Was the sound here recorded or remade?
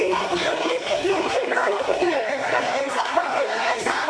remade